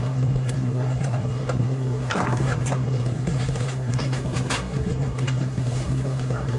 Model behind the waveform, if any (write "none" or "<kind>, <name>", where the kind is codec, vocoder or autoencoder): codec, SNAC